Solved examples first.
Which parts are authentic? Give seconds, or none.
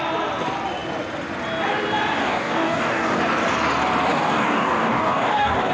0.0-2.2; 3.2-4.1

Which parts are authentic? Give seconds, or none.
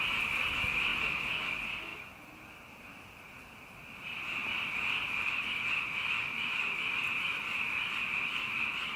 0.9-1.5; 1.9-2.8